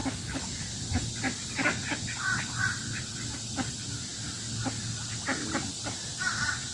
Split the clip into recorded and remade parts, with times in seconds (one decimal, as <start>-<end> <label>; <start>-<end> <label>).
0.0-6.7 recorded